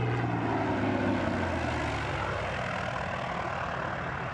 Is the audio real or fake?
real